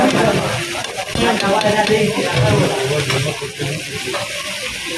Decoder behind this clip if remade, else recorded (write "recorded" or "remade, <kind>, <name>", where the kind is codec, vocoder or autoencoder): recorded